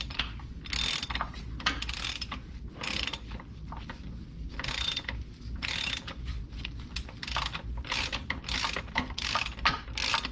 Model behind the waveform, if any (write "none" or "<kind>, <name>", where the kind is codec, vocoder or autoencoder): none